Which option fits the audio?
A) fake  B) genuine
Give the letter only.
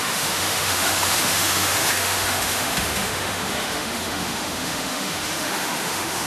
A